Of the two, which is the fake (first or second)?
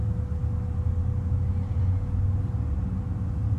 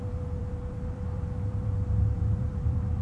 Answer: second